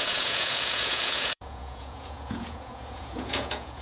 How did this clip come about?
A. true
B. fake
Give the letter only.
B